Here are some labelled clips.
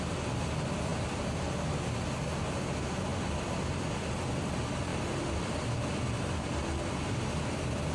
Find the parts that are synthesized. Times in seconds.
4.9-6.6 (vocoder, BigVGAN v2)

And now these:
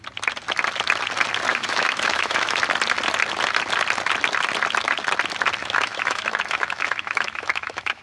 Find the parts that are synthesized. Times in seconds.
1.5-2.6 (autoencoder, DAC-VAE); 5.6-8.0

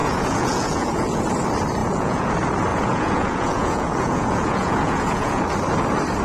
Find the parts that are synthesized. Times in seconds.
0.0-1.2 (vocoder, Vocos); 1.8-2.3; 2.7-5.4

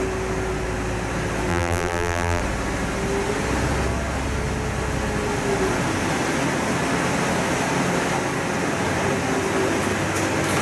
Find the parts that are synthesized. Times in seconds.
1.5-2.4 (vocoder, BigVGAN v2)